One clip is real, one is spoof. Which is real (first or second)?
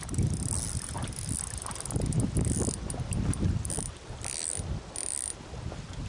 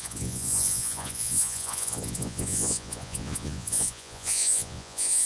first